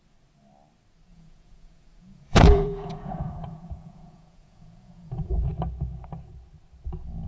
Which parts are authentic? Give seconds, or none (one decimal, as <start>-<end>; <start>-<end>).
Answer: 0.0-1.1; 5.5-7.3